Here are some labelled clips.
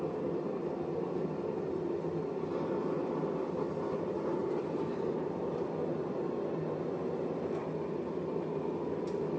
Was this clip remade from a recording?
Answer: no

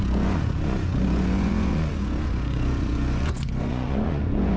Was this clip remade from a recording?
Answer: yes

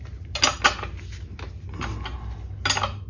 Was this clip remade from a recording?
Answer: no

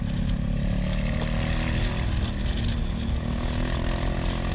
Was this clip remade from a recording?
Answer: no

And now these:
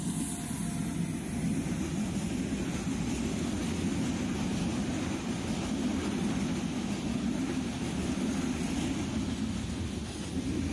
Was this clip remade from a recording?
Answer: no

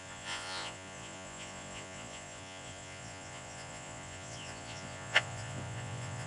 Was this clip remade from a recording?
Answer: yes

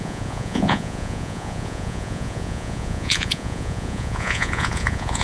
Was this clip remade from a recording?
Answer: yes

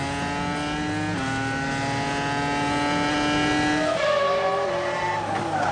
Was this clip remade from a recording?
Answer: no